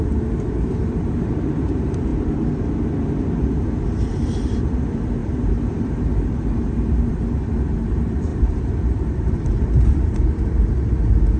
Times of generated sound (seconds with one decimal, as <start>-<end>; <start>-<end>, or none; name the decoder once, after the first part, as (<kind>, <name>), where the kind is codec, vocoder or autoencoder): 0.0-2.1 (vocoder, BigVGAN v2); 3.7-11.4